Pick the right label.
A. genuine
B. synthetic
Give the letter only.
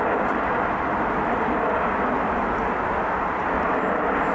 A